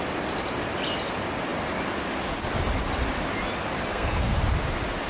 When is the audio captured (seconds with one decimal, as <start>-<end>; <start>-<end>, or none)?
0.0-3.9; 4.4-5.1